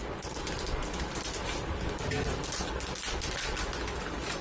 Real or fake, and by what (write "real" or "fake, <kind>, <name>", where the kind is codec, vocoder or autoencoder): real